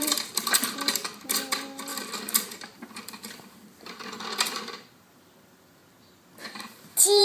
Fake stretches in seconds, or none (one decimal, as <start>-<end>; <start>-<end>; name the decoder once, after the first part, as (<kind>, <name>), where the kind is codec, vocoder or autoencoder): 0.0-5.8 (vocoder, BigVGAN v2)